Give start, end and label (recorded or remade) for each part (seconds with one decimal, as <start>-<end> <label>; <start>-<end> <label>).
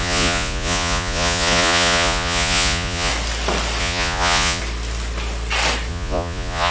0.0-3.1 remade; 3.1-3.8 recorded; 3.8-4.6 remade; 4.6-5.9 recorded; 5.9-6.7 remade